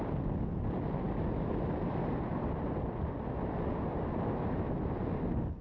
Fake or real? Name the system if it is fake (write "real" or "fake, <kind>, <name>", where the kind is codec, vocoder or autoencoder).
real